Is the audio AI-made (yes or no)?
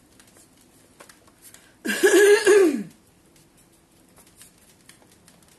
no